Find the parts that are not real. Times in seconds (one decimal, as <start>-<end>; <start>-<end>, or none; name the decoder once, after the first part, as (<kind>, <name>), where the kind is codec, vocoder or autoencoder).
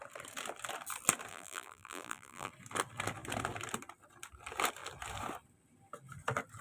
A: 1.3-2.5 (vocoder, BigVGAN v2)